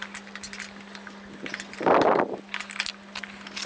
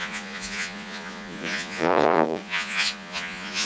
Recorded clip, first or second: first